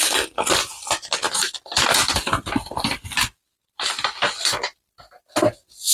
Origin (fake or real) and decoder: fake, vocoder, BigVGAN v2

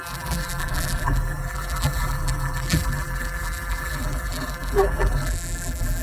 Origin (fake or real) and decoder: fake, vocoder, BigVGAN v2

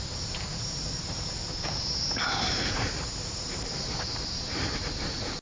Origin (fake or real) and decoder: fake, vocoder, BigVGAN v2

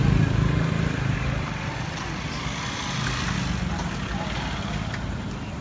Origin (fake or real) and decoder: real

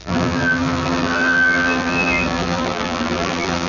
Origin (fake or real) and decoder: fake, vocoder, BigVGAN v2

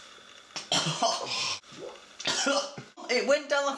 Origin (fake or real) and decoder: real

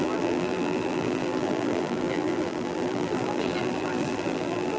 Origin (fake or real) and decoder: fake, vocoder, BigVGAN v2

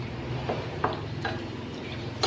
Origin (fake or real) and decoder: fake, vocoder, BigVGAN v2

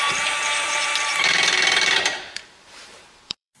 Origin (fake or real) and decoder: fake, vocoder, BigVGAN v2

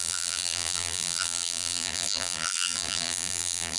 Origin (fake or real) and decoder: fake, vocoder, BigVGAN v2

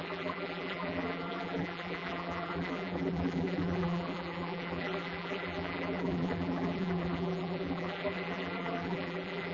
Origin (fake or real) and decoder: fake, vocoder, BigVGAN v2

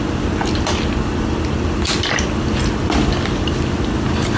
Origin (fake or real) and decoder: real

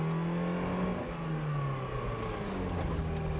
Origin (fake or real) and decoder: real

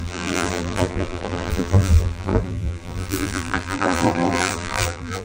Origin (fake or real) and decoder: fake, vocoder, BigVGAN v2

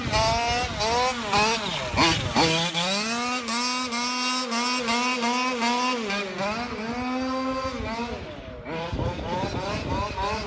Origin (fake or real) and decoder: real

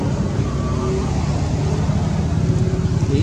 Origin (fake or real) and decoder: real